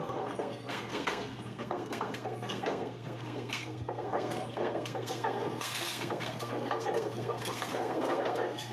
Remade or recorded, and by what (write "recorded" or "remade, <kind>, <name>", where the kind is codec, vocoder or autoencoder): remade, codec, SNAC